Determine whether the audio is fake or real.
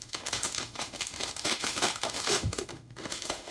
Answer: fake